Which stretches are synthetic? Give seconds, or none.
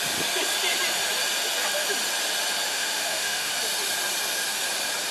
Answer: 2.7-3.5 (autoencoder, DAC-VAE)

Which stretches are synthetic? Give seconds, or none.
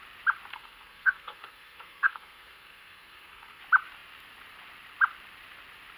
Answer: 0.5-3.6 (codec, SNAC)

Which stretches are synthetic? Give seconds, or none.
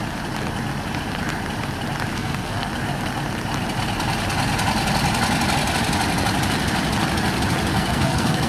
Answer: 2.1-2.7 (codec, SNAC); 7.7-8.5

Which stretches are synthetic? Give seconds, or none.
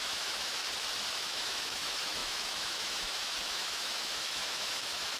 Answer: 0.0-0.6 (autoencoder, DAC-VAE); 1.1-5.2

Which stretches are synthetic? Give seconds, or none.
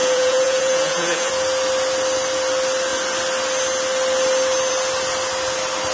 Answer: 0.0-1.3 (vocoder, Vocos)